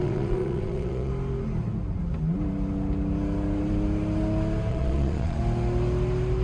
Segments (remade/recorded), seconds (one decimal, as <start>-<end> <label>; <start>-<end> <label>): 0.0-1.1 remade; 1.1-4.7 recorded; 4.7-5.4 remade; 5.4-6.4 recorded